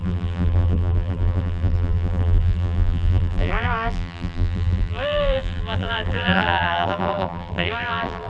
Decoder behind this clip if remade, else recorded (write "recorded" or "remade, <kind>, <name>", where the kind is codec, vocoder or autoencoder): remade, vocoder, BigVGAN v2